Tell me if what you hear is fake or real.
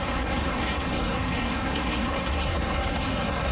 fake